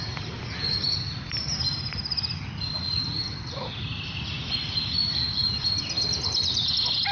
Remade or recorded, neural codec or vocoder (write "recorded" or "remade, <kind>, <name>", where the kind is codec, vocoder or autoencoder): remade, vocoder, BigVGAN v2